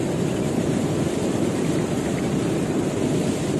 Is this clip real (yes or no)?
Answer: yes